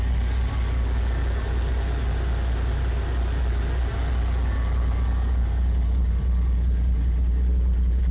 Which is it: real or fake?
real